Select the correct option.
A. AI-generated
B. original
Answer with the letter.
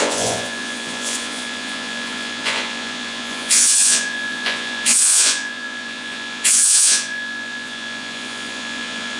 A